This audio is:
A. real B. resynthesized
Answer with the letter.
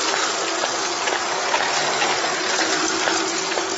A